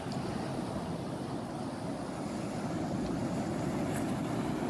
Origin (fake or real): real